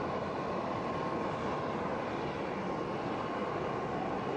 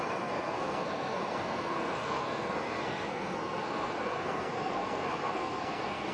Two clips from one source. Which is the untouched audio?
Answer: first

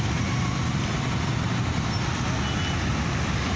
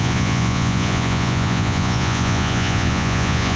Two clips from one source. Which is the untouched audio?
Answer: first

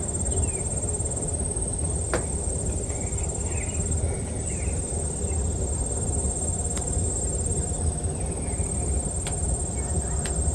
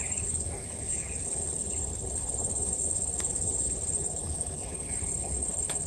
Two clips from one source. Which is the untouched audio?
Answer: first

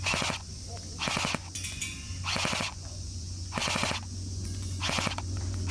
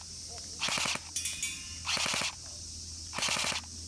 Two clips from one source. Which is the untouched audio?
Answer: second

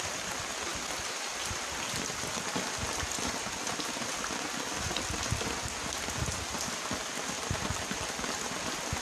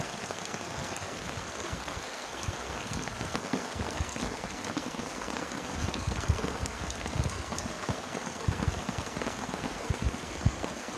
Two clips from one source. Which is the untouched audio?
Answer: first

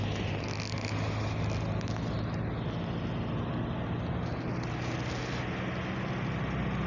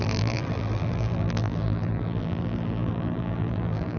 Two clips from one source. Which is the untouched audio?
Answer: first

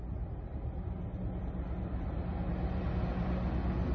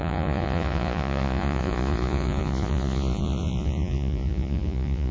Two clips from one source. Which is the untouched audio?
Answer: first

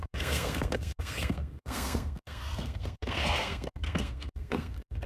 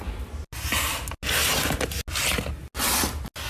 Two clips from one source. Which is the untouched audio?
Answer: second